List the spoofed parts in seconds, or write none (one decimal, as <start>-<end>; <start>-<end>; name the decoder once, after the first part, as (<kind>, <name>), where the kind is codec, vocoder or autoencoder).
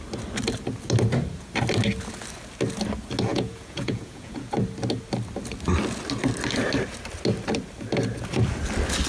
3.3-4.5 (vocoder, Vocos)